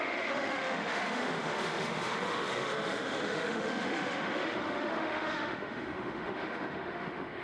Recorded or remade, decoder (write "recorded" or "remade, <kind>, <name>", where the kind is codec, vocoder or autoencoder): remade, autoencoder, DAC-VAE